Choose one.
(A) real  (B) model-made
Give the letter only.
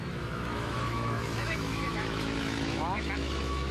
B